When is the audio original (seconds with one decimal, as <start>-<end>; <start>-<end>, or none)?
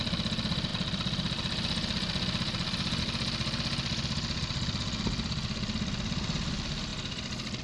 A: 0.0-7.6